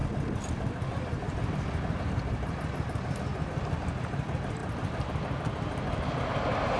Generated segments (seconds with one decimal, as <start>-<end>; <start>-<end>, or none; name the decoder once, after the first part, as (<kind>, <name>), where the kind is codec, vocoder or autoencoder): none